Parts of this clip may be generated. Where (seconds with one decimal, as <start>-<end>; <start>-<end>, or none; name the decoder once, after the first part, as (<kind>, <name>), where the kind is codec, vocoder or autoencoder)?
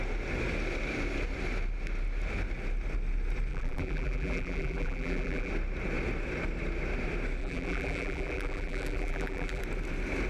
3.5-5.5 (vocoder, BigVGAN v2); 7.4-9.6